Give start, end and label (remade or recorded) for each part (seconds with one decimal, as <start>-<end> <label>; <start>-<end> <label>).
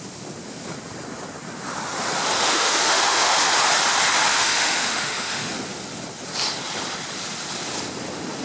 0.0-2.4 recorded; 2.4-3.5 remade; 3.5-4.3 recorded; 4.3-5.5 remade; 5.5-8.4 recorded